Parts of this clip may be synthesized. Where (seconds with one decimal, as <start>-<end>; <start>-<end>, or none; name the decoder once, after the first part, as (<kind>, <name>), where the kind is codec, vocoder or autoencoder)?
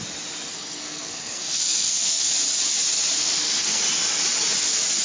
0.5-2.3 (codec, SNAC); 3.2-3.8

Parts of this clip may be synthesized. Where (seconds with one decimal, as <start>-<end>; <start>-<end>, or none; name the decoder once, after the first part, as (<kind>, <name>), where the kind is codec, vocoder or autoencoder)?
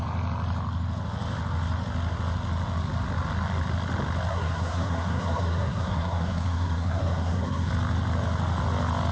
4.3-7.7 (codec, SNAC)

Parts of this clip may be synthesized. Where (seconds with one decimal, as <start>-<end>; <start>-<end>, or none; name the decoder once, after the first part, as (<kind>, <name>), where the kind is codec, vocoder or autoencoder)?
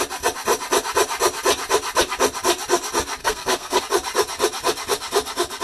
3.2-3.8 (codec, SNAC)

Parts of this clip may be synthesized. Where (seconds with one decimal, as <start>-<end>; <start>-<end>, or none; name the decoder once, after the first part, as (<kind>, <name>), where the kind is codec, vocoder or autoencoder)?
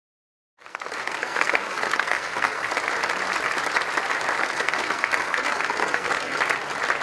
0.4-2.7 (codec, SNAC); 4.4-6.4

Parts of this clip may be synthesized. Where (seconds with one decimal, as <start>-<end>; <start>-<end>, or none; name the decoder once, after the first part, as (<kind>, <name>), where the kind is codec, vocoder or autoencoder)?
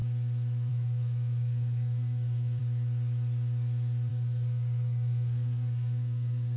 0.7-2.6 (codec, SNAC); 4.1-6.6